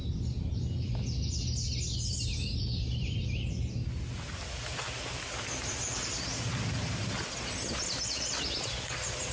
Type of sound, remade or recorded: recorded